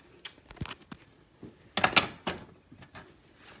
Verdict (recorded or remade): recorded